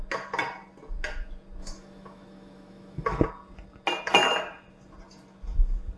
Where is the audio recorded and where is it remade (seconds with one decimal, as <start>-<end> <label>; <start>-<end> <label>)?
0.0-1.6 recorded; 1.6-3.2 remade; 3.2-6.0 recorded